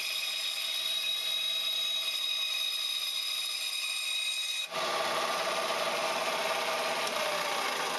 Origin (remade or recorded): recorded